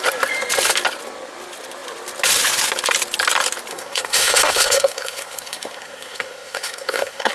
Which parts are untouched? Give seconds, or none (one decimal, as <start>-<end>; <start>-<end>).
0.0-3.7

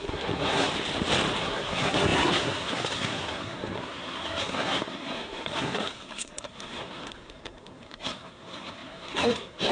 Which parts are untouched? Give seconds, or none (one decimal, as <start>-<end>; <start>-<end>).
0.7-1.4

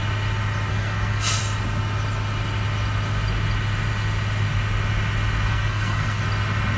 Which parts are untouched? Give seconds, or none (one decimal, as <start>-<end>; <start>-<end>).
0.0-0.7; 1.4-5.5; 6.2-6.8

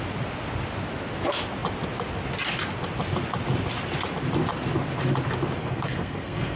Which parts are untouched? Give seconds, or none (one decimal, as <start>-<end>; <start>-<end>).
0.0-5.6

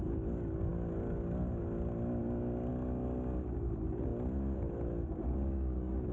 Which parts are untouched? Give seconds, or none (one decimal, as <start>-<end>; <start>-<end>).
0.0-6.1

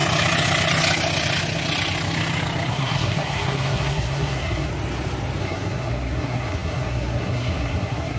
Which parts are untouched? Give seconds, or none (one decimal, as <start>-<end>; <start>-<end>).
0.0-2.7; 4.7-5.4

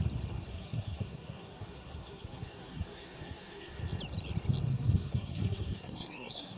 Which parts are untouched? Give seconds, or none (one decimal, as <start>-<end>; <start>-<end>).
0.0-0.5; 3.8-4.7